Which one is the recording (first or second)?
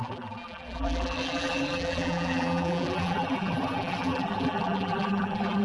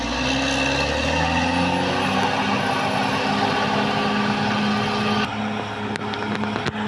second